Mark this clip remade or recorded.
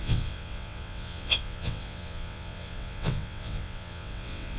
remade